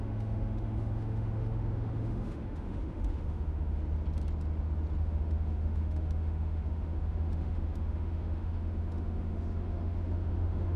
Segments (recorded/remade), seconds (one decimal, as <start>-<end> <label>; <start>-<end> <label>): 0.0-3.8 remade; 3.8-5.0 recorded; 5.0-10.8 remade